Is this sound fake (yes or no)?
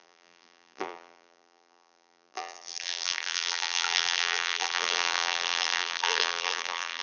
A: yes